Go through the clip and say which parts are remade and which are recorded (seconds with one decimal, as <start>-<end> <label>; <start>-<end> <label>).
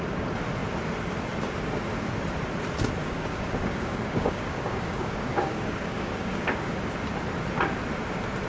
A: 0.0-3.0 recorded; 3.0-6.7 remade; 6.7-8.5 recorded